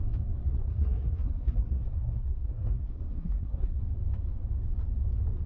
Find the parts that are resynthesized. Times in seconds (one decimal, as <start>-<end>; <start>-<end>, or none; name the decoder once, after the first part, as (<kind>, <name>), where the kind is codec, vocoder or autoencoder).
0.5-3.8 (codec, SNAC)